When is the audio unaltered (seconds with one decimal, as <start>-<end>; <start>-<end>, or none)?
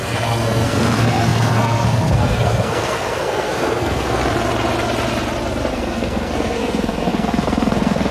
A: 4.2-5.7